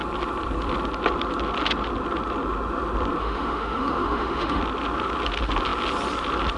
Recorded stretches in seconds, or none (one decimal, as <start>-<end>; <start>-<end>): 0.0-3.2; 4.6-6.6